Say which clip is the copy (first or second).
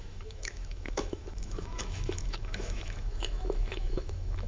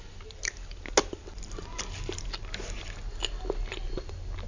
first